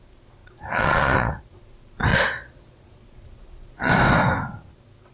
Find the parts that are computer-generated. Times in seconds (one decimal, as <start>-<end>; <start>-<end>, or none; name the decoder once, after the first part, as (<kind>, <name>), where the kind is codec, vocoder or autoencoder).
0.4-1.6 (vocoder, Vocos); 2.1-3.9